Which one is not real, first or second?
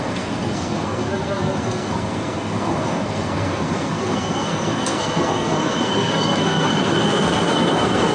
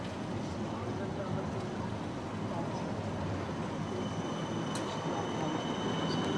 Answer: first